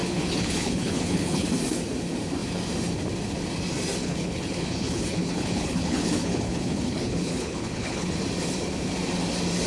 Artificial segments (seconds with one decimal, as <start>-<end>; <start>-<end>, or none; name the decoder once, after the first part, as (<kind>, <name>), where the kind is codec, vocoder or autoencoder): 0.0-1.5 (codec, HILCodec); 4.0-8.2